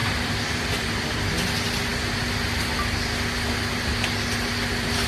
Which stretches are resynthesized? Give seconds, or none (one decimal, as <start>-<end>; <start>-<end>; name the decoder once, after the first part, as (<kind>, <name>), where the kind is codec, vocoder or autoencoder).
0.0-1.4 (vocoder, BigVGAN v2)